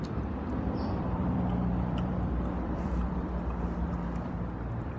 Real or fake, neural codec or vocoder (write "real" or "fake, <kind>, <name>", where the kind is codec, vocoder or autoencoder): fake, vocoder, BigVGAN v2